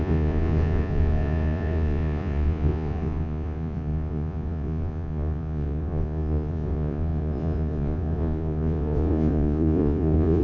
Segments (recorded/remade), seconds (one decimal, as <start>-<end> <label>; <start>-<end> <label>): 0.0-10.4 remade